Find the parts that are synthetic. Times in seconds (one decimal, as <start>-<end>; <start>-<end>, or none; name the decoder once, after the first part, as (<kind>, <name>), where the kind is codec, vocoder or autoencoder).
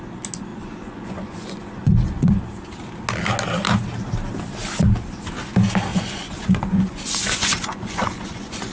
0.5-2.4 (vocoder, Vocos); 5.9-8.7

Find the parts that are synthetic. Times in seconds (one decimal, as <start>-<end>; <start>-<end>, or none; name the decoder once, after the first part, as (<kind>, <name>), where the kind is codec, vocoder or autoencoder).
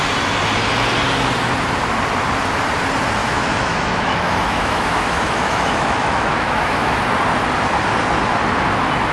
3.2-7.0 (autoencoder, DAC-VAE)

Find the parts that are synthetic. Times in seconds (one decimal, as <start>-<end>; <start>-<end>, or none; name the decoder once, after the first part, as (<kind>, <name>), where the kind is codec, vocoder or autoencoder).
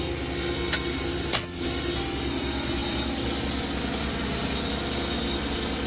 none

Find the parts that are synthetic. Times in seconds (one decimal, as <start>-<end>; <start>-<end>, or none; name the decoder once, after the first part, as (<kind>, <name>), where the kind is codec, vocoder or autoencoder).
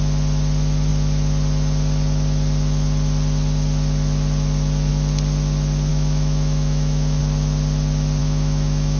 5.9-7.2 (autoencoder, DAC-VAE); 8.2-9.0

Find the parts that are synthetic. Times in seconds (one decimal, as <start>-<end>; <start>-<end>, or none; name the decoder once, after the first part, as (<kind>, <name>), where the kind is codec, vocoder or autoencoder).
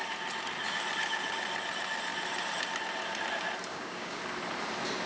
3.7-4.2 (codec, DAC)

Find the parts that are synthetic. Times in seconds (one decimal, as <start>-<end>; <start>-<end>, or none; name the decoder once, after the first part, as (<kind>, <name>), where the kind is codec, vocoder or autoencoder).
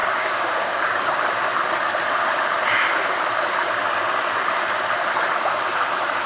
0.0-1.2 (codec, DAC)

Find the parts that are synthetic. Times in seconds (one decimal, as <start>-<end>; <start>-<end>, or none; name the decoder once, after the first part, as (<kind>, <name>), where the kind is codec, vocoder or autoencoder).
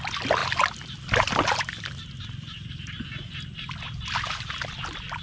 0.4-2.2 (vocoder, BigVGAN v2)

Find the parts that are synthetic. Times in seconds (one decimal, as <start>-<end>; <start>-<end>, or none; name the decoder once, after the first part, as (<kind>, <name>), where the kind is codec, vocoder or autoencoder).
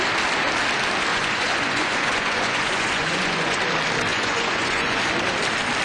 1.1-3.6 (vocoder, Vocos); 4.1-5.0